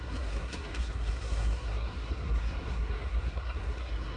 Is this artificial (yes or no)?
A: yes